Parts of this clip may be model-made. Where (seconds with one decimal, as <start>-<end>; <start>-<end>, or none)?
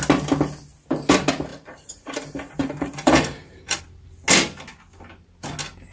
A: 1.5-3.8